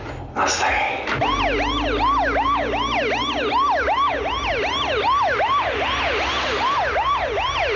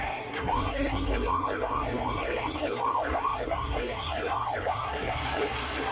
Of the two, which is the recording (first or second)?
first